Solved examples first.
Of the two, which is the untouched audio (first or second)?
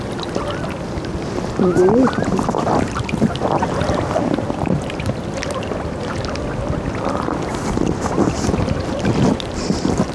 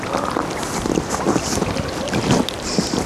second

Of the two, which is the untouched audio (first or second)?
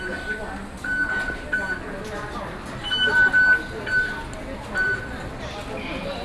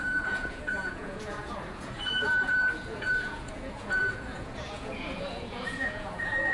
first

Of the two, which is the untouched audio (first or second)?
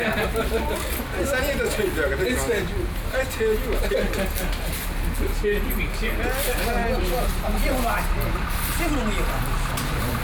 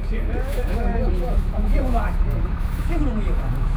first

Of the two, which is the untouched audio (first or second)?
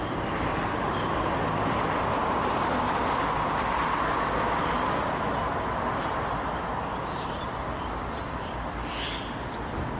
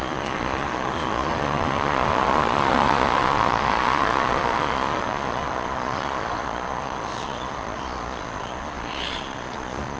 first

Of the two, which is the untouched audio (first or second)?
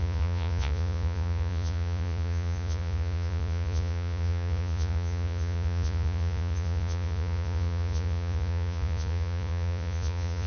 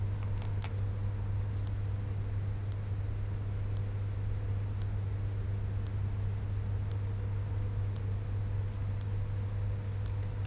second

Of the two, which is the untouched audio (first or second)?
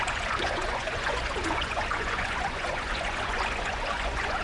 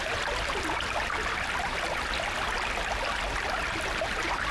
second